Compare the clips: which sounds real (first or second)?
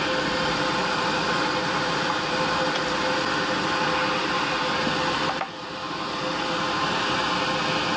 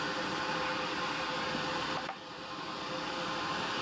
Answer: first